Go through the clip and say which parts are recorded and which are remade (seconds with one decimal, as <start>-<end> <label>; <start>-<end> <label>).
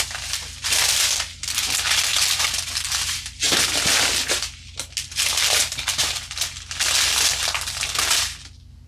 0.0-8.9 recorded